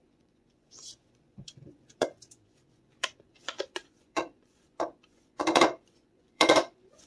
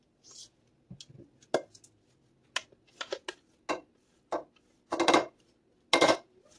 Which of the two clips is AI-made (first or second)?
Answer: first